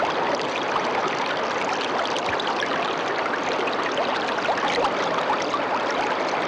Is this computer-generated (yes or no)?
no